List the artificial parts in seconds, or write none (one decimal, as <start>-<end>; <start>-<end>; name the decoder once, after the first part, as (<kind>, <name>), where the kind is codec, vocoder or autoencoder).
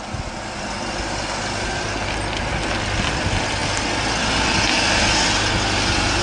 none